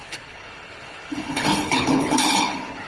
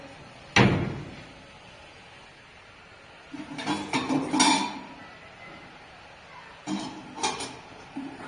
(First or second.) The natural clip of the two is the second